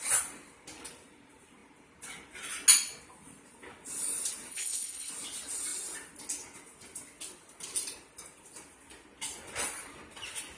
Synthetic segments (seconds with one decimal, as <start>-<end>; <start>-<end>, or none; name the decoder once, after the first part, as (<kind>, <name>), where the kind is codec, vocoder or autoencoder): 4.5-5.1 (codec, HILCodec)